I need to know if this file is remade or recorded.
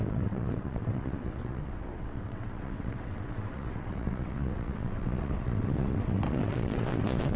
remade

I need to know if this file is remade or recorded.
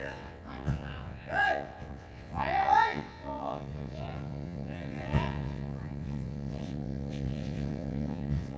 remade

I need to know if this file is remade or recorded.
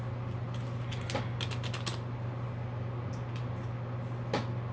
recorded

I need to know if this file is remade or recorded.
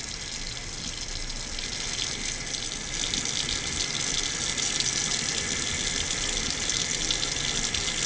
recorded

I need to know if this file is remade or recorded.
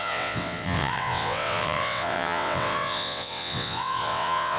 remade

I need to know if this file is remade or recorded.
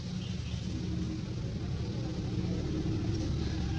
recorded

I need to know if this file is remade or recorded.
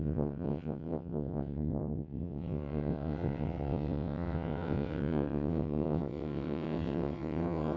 remade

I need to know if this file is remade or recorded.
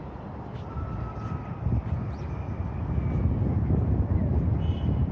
recorded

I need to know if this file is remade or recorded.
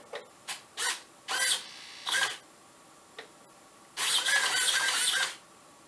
recorded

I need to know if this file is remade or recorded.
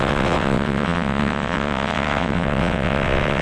remade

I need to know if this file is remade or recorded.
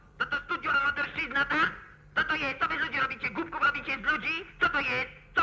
recorded